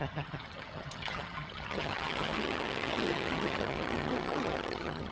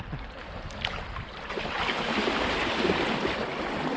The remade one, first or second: first